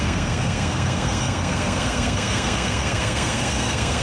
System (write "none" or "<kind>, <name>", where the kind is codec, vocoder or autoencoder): codec, SNAC